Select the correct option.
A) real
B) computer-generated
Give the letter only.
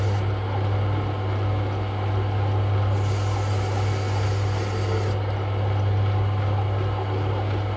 A